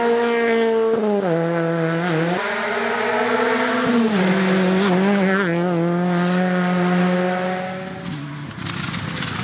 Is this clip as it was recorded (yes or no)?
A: yes